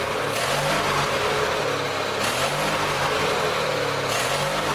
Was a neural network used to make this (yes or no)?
no